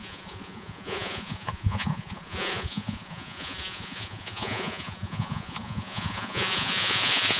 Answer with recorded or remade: remade